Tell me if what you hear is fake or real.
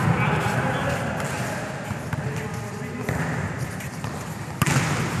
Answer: real